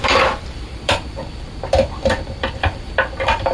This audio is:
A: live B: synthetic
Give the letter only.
B